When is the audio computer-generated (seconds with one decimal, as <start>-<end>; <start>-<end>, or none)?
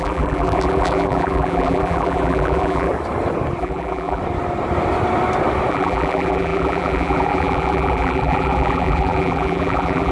0.0-2.9; 3.6-4.2; 5.7-10.1